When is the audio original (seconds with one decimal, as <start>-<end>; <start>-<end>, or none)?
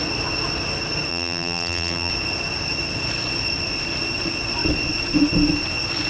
0.0-1.1; 2.1-6.1